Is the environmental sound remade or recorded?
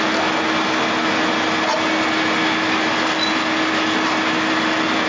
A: recorded